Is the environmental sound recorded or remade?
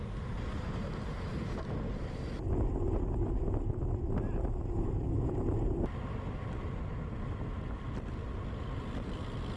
recorded